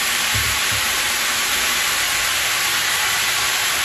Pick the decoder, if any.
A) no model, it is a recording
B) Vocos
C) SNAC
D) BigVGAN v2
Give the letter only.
D